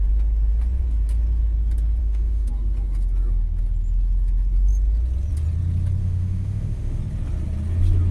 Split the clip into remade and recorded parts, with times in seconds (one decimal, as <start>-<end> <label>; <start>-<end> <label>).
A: 0.0-2.0 recorded; 2.0-2.5 remade; 2.5-6.0 recorded; 6.0-7.0 remade; 7.0-8.1 recorded